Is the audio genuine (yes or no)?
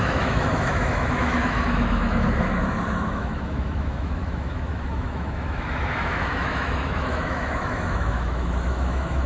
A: no